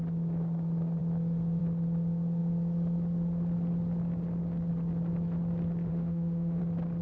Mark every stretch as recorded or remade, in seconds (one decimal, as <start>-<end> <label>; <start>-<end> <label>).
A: 0.0-5.9 recorded; 5.9-6.6 remade; 6.6-7.0 recorded